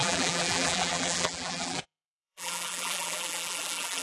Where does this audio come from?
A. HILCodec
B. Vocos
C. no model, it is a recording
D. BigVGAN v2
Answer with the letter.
D